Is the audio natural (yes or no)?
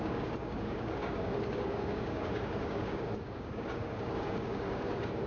no